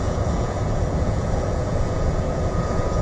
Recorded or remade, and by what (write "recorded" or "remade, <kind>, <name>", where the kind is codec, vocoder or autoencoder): remade, vocoder, Vocos